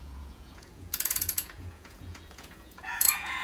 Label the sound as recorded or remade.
remade